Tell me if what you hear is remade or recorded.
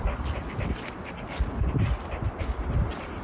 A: recorded